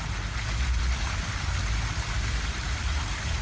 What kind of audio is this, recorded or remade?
recorded